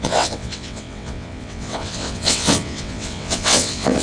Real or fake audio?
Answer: fake